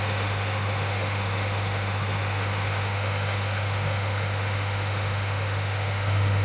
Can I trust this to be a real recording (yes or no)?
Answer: no